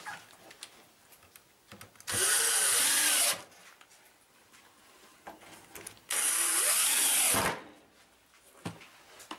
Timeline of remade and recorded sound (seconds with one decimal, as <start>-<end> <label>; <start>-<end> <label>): 0.0-9.4 recorded